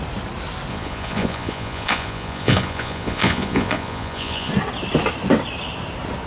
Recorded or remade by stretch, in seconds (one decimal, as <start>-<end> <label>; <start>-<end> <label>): 0.0-0.7 recorded; 0.7-4.5 remade; 4.5-6.3 recorded